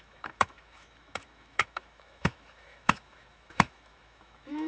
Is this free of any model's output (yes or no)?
no